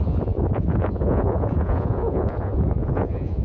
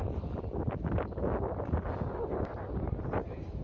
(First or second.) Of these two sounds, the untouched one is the second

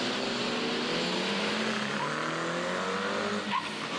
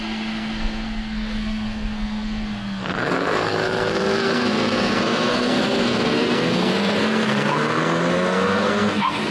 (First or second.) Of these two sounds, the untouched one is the first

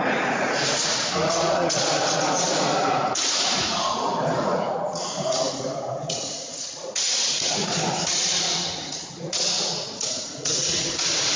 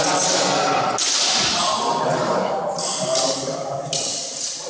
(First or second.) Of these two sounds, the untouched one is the second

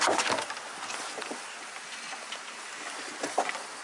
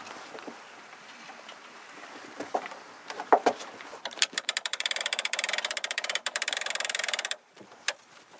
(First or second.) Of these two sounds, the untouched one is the first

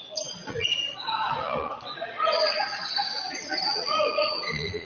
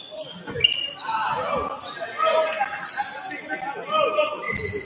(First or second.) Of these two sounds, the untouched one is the second